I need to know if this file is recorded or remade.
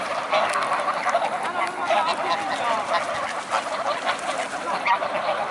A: recorded